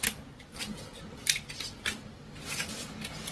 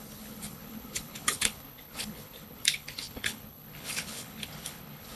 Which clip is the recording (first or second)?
first